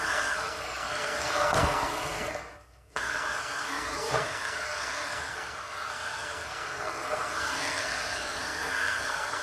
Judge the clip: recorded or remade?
remade